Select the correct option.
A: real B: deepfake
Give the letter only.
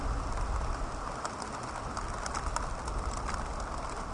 A